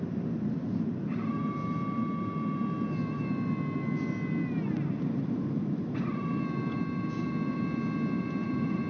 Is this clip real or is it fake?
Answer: real